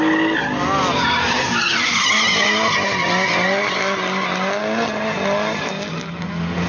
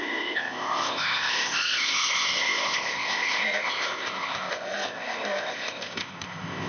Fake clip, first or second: second